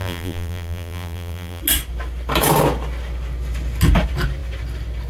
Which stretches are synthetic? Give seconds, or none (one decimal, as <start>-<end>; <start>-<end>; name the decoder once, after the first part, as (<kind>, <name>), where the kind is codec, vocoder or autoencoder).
0.0-1.6 (vocoder, BigVGAN v2)